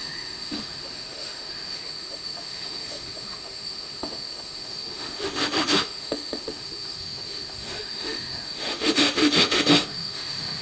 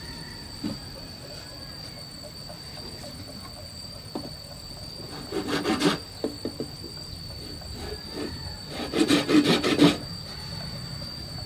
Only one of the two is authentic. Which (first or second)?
second